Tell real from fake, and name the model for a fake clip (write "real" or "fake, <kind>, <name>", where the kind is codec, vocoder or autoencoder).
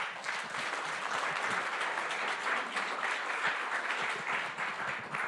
real